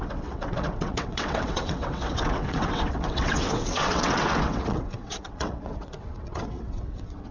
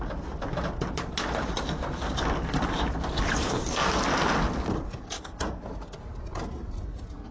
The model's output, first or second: first